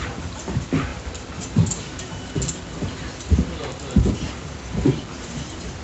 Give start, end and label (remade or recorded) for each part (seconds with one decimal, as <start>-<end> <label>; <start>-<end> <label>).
0.0-5.8 recorded